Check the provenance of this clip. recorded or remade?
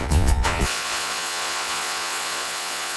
remade